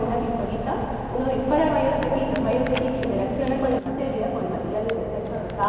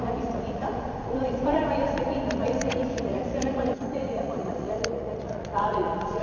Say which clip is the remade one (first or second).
second